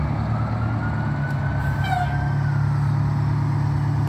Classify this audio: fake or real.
real